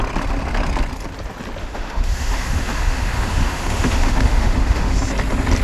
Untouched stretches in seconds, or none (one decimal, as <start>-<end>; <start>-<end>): 0.0-1.6; 5.0-5.6